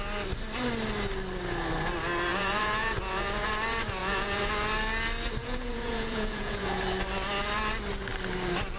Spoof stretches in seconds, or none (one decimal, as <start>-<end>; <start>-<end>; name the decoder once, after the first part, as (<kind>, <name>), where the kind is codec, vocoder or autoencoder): 2.3-3.5 (vocoder, Vocos); 4.0-4.5; 5.4-6.8